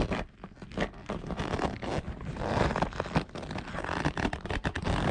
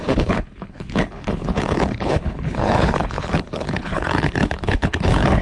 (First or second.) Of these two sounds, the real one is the first